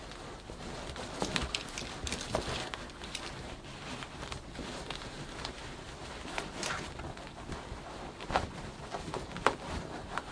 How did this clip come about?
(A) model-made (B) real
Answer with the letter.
B